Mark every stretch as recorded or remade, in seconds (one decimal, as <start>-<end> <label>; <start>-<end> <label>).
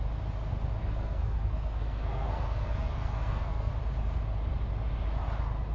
0.0-0.8 recorded; 0.8-3.7 remade; 3.7-5.7 recorded